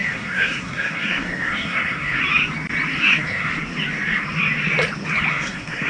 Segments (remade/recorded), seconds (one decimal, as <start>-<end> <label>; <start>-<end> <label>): 0.0-2.2 remade; 2.2-3.0 recorded; 3.0-3.5 remade; 3.5-5.3 recorded; 5.3-5.9 remade